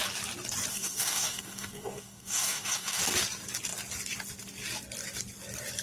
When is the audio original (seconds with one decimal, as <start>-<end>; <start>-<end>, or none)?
0.0-0.7; 3.0-5.8